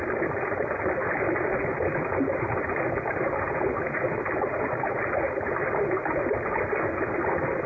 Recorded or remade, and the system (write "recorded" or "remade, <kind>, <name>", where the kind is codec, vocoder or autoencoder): recorded